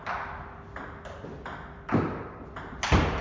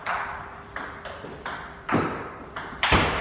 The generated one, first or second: second